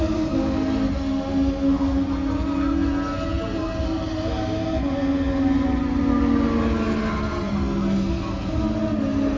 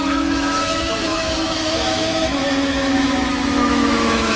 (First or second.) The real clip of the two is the first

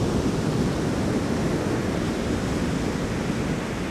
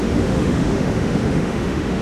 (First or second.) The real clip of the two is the first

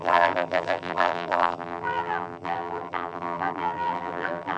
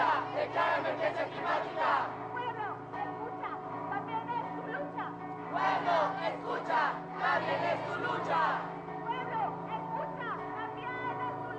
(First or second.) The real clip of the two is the second